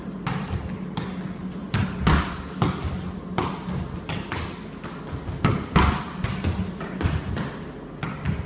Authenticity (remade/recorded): recorded